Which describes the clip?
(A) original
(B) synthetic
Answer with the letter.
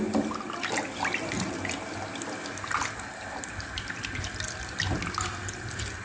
A